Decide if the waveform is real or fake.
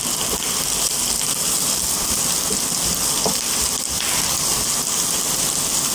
real